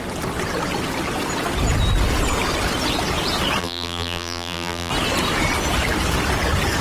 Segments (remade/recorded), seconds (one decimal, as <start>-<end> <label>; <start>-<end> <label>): 0.0-3.6 recorded; 3.6-4.9 remade; 4.9-6.8 recorded